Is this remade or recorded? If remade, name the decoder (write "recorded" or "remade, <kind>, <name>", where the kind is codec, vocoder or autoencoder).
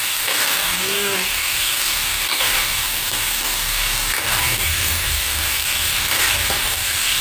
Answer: remade, codec, DAC